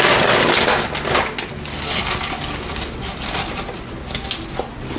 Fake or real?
real